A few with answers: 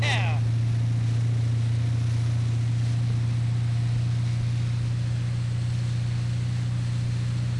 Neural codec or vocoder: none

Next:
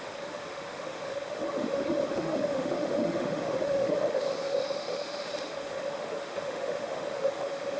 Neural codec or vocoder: autoencoder, DAC-VAE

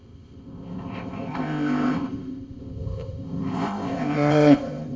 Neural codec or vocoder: codec, ZipCodec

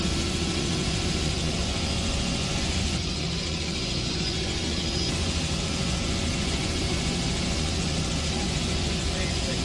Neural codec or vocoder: vocoder, Vocos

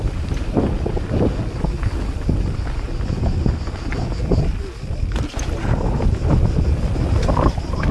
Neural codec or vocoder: none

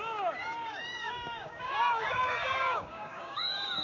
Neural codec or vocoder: codec, DAC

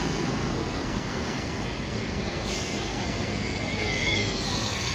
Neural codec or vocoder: codec, SNAC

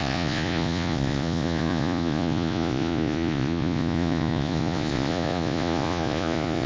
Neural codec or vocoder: vocoder, Vocos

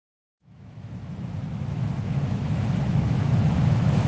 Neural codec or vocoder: autoencoder, DAC-VAE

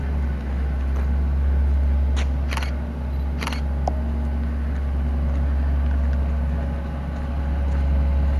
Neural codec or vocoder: none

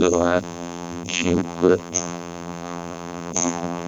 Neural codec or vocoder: vocoder, BigVGAN v2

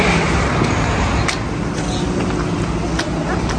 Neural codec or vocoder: none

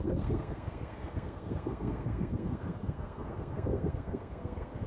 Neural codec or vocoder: codec, SNAC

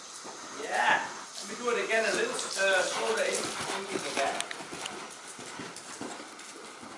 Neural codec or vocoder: none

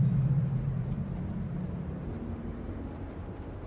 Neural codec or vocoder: vocoder, BigVGAN v2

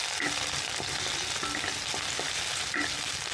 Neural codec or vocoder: none